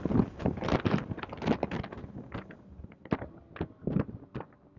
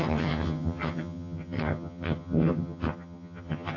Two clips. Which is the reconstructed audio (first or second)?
second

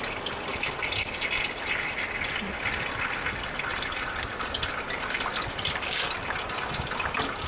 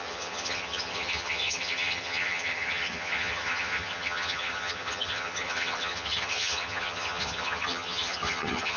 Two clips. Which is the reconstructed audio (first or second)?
second